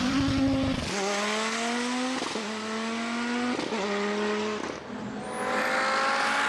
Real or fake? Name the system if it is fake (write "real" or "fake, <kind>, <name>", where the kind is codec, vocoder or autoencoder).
real